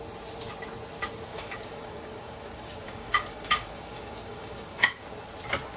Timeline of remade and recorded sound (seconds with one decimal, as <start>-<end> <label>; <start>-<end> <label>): 0.0-1.3 recorded; 1.3-4.8 remade; 4.8-5.8 recorded